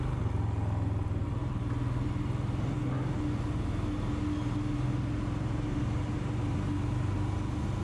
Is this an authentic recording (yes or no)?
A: yes